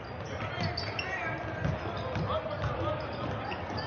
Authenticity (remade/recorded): recorded